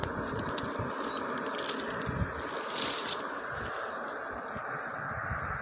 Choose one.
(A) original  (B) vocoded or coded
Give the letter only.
A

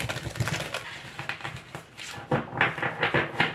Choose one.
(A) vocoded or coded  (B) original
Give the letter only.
B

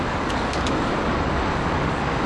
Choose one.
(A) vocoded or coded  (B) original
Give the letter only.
A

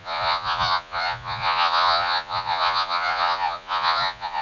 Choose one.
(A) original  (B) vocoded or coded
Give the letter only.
B